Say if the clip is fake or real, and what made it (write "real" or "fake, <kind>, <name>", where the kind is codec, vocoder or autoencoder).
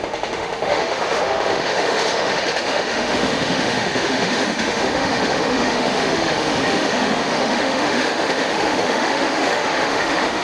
fake, autoencoder, DAC-VAE